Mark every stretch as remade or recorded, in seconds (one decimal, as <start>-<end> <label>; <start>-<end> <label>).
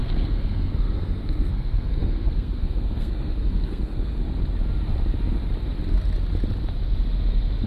0.0-4.2 remade; 4.2-7.7 recorded